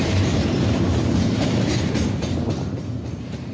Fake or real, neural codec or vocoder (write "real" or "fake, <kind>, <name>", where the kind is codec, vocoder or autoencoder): fake, vocoder, BigVGAN v2